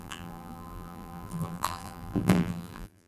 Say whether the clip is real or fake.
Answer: fake